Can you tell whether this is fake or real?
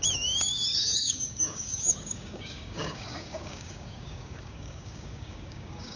fake